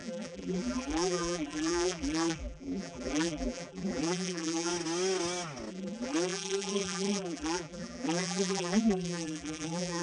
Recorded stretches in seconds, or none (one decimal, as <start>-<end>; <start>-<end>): 4.7-5.7